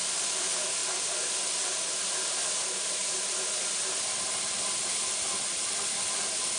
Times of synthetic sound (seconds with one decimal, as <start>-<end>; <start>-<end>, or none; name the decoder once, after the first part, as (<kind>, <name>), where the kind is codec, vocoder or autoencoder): none

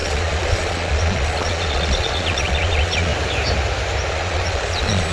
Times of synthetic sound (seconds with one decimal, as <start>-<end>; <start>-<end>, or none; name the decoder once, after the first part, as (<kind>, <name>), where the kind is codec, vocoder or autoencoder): 0.0-3.1 (vocoder, Vocos); 4.1-5.1